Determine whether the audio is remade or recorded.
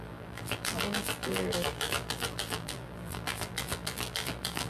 remade